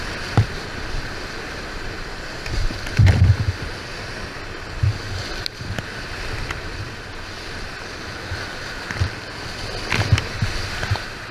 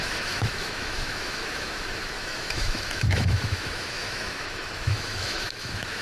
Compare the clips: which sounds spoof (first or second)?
second